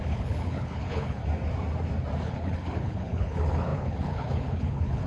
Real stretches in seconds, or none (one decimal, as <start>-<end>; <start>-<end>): 1.2-2.2